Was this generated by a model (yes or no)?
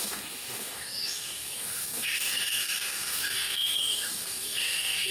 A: yes